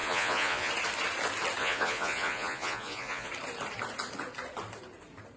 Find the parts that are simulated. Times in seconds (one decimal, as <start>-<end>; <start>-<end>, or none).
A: 0.0-0.7; 1.6-3.3